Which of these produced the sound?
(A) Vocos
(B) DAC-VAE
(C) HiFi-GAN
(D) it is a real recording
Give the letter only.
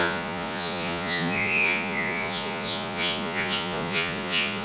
A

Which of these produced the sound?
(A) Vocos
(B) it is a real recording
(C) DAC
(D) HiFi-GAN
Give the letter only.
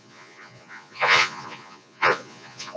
A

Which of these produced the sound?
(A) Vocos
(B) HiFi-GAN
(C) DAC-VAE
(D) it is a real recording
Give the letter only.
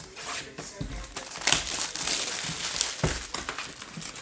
D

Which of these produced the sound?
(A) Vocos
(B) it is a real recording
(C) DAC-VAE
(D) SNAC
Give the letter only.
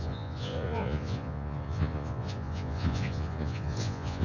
A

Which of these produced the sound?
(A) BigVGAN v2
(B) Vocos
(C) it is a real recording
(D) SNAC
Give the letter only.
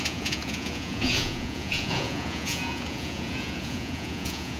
B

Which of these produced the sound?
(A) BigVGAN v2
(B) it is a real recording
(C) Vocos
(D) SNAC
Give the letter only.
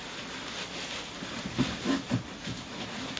B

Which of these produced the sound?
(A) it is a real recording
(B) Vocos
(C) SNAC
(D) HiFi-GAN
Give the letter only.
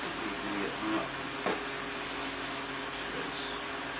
A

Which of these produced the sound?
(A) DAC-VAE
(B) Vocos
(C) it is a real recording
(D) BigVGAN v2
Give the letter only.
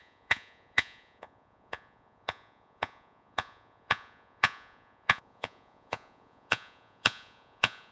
B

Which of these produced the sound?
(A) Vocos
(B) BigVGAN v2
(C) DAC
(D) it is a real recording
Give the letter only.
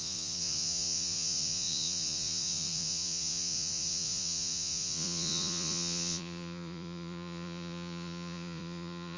A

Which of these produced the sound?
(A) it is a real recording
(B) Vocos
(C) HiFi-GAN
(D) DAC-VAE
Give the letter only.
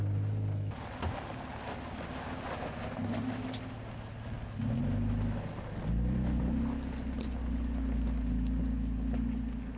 A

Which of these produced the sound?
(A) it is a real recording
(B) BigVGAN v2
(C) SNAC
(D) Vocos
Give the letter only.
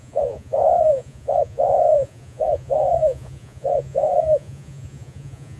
D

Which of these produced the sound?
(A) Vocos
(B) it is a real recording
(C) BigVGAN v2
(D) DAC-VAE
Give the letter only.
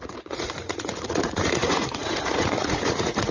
A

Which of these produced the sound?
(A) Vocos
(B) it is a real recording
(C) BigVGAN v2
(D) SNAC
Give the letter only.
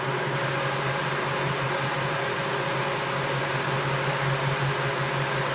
B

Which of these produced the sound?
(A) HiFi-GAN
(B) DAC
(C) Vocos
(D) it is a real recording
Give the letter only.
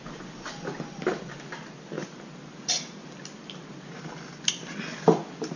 D